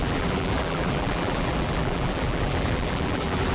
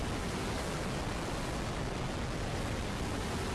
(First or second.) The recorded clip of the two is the second